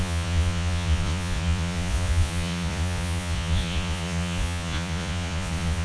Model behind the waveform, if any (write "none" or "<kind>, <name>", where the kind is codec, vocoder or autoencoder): vocoder, Vocos